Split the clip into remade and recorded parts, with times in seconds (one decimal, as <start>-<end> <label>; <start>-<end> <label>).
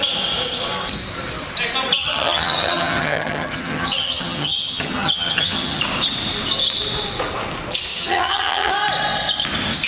0.0-2.0 recorded; 2.0-5.8 remade; 5.8-7.9 recorded; 7.9-8.7 remade; 8.7-9.9 recorded